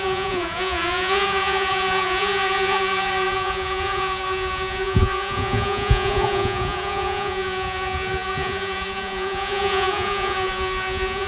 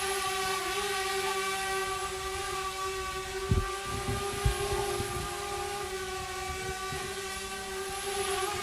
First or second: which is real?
second